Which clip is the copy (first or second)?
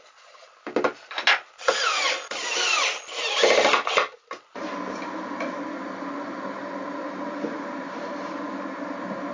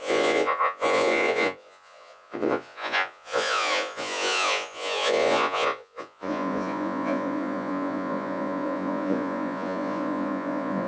second